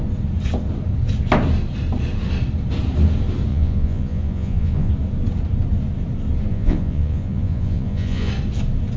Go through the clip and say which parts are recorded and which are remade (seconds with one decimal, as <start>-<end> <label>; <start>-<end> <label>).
0.0-3.5 recorded; 3.5-4.9 remade; 4.9-6.5 recorded; 6.5-8.3 remade; 8.3-9.0 recorded